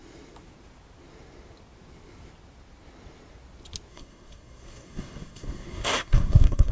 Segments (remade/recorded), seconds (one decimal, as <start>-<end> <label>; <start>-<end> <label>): 0.0-3.9 recorded; 3.9-6.7 remade